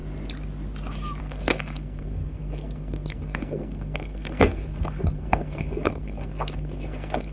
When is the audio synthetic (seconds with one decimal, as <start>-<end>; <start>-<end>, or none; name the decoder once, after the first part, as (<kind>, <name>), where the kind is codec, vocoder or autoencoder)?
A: 1.2-7.3 (codec, SNAC)

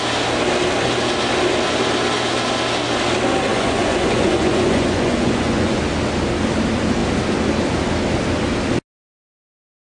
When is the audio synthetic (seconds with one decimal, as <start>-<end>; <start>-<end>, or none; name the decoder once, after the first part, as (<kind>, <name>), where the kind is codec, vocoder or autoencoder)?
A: 3.5-5.8 (vocoder, Vocos)

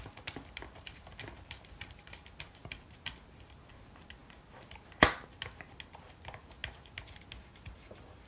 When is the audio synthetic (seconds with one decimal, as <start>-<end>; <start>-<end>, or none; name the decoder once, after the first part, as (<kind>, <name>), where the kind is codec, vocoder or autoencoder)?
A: none

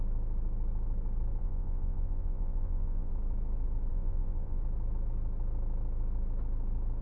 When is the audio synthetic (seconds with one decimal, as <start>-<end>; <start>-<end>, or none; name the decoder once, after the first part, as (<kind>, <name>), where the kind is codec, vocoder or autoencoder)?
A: 1.4-3.1 (vocoder, Vocos); 3.9-4.6

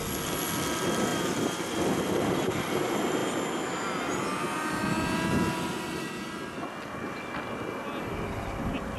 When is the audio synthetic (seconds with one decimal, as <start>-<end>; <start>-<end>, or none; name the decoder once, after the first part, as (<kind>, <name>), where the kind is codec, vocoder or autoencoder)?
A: 1.1-2.6 (vocoder, BigVGAN v2)

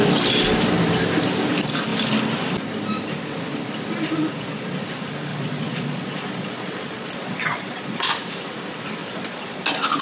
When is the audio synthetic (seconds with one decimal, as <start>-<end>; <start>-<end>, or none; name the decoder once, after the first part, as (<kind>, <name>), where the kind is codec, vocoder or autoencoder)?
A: 5.3-8.1 (vocoder, Vocos); 9.0-9.6

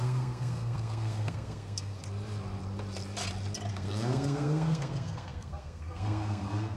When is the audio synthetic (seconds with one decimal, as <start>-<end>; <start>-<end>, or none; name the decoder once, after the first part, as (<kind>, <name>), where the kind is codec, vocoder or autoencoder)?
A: 0.0-2.0 (codec, SNAC); 3.7-6.8

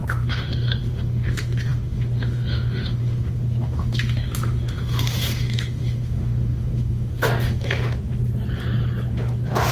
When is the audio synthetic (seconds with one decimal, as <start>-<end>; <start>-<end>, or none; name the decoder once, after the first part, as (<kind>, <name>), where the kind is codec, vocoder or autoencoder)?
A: 0.0-8.2 (autoencoder, DAC-VAE); 9.1-9.7